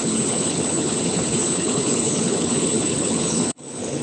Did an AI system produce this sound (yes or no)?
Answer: yes